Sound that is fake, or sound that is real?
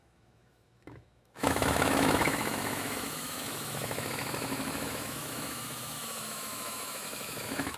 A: fake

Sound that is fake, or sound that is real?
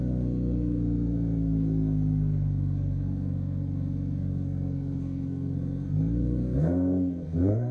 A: fake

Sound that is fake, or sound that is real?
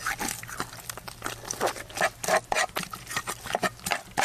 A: real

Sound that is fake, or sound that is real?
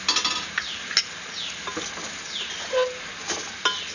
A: real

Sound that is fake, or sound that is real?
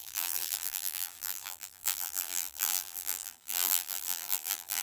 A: fake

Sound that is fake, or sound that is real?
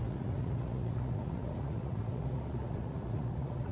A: fake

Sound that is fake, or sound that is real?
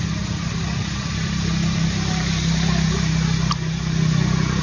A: real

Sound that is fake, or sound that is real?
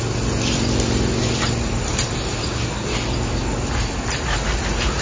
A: real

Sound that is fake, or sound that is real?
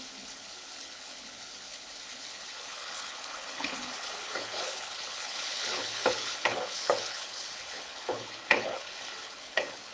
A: fake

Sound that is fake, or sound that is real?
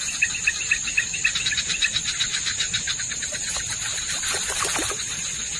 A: real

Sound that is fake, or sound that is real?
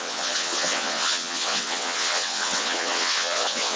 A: fake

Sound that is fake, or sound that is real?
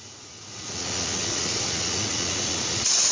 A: fake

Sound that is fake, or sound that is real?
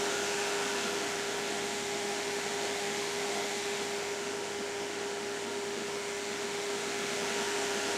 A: fake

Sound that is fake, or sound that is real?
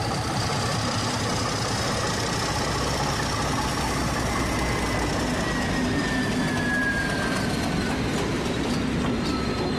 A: real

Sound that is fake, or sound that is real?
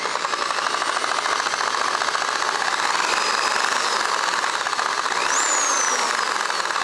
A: real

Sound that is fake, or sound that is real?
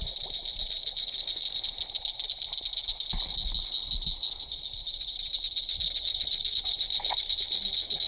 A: real